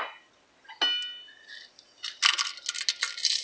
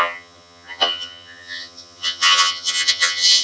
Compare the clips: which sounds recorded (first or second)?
first